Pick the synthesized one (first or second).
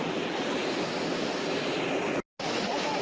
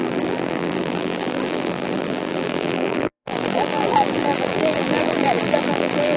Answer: second